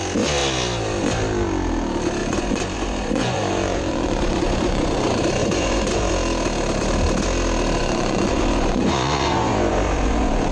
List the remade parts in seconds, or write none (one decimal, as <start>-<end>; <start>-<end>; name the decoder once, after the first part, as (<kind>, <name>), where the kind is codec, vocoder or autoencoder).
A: 2.2-5.0 (vocoder, Vocos); 5.4-6.1; 7.8-10.5